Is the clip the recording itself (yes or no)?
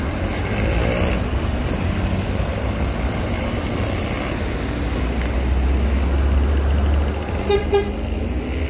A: yes